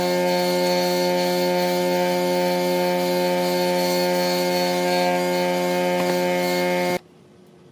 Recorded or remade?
recorded